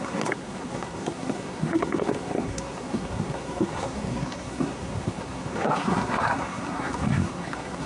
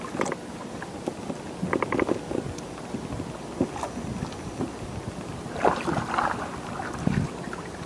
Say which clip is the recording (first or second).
second